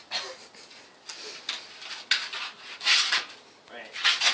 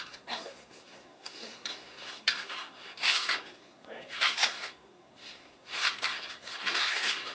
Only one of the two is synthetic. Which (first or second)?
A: second